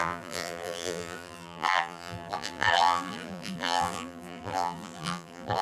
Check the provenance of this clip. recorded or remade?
remade